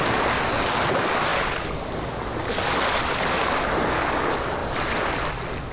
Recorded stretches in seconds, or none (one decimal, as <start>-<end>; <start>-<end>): 0.0-5.7